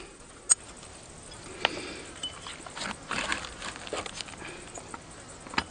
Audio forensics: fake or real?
real